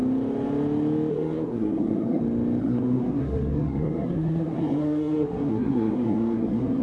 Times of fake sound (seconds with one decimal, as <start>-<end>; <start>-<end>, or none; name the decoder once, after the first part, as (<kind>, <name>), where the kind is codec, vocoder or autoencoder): 1.1-2.2 (codec, SNAC); 2.6-6.8